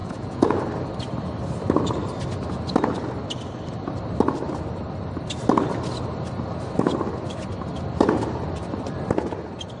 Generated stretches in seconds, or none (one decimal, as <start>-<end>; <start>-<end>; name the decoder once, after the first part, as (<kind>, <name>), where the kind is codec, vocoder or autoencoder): 0.0-0.6 (vocoder, Vocos)